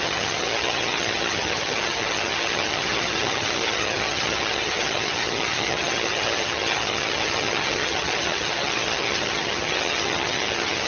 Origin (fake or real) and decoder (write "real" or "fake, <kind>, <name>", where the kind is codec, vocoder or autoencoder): fake, vocoder, HiFi-GAN